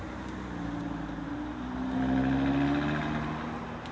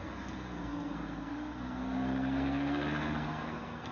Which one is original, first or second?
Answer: first